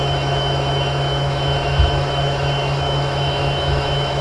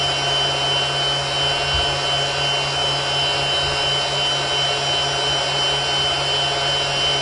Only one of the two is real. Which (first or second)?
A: second